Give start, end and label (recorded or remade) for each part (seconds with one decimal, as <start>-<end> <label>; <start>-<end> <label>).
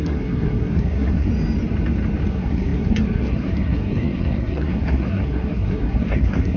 0.0-1.3 remade; 1.3-2.3 recorded; 2.3-6.6 remade